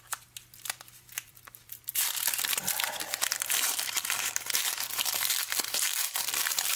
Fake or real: fake